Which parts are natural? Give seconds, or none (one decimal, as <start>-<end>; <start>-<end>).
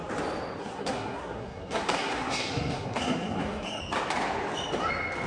0.0-0.6; 3.8-5.3